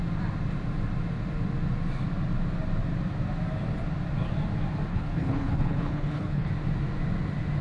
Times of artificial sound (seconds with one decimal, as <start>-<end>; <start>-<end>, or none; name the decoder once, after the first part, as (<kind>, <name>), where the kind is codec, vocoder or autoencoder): 4.9-6.5 (codec, HILCodec)